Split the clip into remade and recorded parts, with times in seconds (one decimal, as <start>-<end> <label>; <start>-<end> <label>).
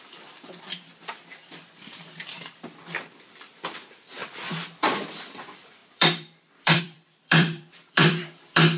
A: 0.0-4.2 remade; 4.2-5.1 recorded; 5.1-8.8 remade